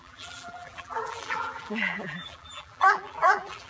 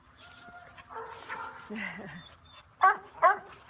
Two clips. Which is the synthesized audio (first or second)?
first